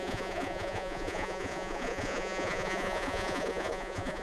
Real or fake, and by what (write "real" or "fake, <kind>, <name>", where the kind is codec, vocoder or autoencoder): fake, vocoder, Vocos